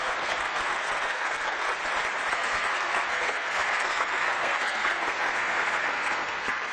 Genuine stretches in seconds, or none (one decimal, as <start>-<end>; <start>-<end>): 1.8-2.3